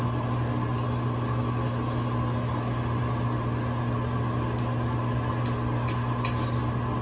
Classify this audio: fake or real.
real